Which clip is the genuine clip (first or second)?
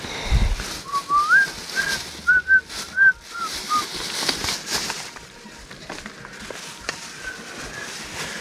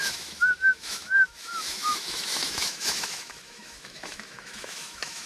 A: first